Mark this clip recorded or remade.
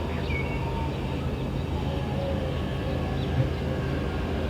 recorded